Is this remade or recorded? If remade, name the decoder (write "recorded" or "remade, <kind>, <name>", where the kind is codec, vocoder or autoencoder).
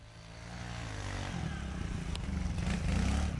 recorded